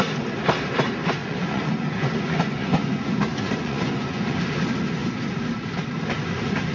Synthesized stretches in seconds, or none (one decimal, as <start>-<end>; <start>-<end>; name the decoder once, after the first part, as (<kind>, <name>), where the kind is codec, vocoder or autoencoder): 1.2-4.4 (vocoder, Vocos)